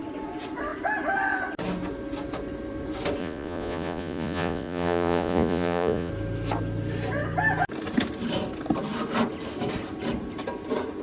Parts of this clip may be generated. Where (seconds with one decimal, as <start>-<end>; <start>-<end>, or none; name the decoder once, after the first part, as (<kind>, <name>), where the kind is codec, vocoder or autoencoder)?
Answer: 3.2-6.1 (vocoder, Vocos)